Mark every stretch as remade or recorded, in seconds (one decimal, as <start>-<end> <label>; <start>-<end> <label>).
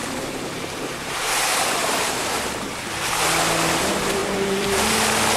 0.0-3.2 remade; 3.2-4.2 recorded; 4.2-4.9 remade; 4.9-5.4 recorded